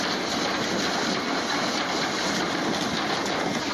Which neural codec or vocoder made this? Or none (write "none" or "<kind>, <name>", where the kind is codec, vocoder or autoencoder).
none